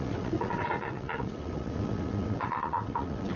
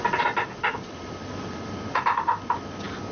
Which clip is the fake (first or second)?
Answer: first